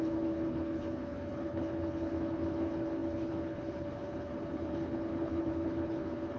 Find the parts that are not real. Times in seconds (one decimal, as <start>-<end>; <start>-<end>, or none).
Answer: 0.0-6.4